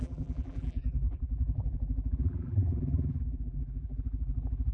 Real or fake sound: fake